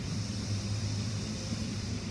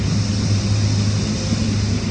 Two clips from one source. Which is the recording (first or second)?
second